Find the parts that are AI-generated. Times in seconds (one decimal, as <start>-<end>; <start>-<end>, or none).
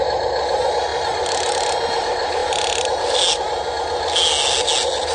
none